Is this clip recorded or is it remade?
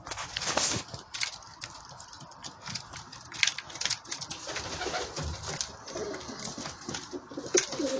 recorded